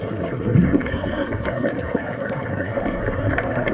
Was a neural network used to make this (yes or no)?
yes